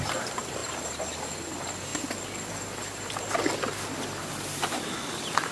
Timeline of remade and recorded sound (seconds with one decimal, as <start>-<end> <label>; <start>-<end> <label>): 0.0-0.6 remade; 0.6-1.3 recorded; 1.3-1.9 remade; 1.9-2.9 recorded; 2.9-5.5 remade